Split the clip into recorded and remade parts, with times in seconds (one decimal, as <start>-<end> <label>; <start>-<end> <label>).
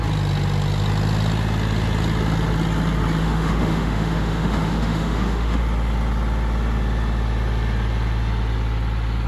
0.0-3.2 recorded; 3.2-5.6 remade; 5.6-9.3 recorded